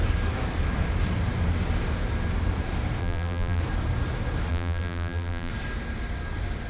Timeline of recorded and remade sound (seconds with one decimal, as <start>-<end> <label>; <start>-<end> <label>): 0.0-3.0 recorded; 3.0-3.6 remade; 3.6-4.5 recorded; 4.5-5.5 remade; 5.5-6.7 recorded